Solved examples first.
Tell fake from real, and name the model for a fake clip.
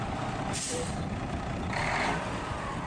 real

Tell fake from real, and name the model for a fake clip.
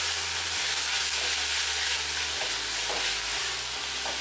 real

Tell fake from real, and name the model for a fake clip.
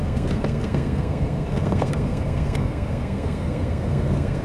fake, codec, SNAC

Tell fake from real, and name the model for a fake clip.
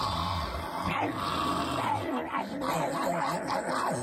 real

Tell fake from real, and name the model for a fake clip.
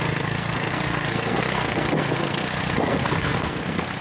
fake, codec, SNAC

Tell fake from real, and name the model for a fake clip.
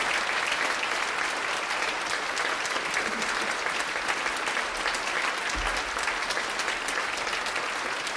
real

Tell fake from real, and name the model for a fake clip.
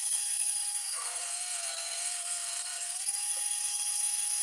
fake, codec, SNAC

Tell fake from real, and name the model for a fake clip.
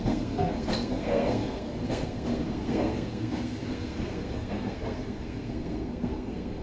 fake, codec, SNAC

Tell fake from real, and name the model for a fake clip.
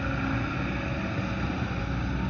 real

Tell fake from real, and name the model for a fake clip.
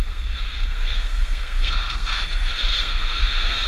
fake, codec, SNAC